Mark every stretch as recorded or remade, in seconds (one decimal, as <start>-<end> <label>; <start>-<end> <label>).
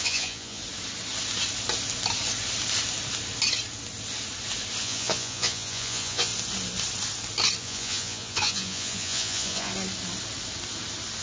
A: 0.0-0.6 remade; 0.6-4.8 recorded; 4.8-6.3 remade; 6.3-7.6 recorded; 7.6-9.7 remade; 9.7-11.2 recorded